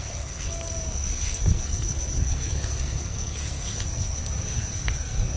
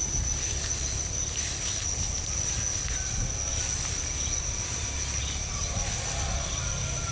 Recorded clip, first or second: second